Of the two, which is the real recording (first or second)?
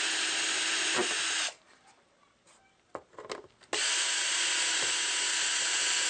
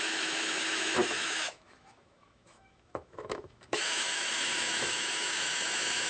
first